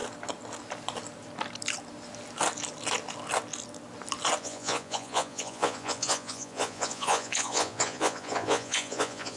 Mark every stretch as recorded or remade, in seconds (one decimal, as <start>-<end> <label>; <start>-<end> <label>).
0.0-4.4 recorded; 4.4-9.4 remade